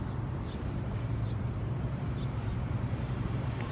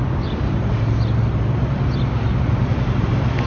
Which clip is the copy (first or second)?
first